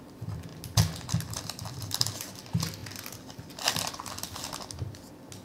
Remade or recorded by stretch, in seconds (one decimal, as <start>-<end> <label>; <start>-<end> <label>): 0.0-5.4 recorded